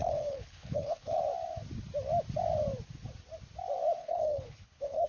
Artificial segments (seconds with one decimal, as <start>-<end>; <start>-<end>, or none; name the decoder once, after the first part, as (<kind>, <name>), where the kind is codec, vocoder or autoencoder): 0.0-1.2 (codec, HILCodec); 4.0-5.1